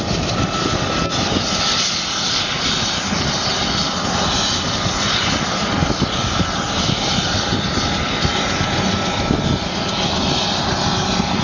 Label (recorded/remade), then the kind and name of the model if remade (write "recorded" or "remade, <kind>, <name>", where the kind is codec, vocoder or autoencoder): recorded